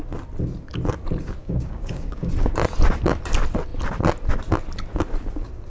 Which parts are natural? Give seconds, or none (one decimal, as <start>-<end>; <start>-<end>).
0.0-1.4; 2.3-5.7